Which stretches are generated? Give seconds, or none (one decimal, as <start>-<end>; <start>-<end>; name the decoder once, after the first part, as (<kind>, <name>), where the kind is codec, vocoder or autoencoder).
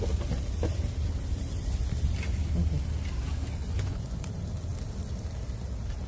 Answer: 3.6-4.2 (vocoder, Vocos)